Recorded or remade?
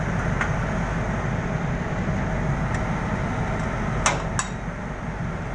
recorded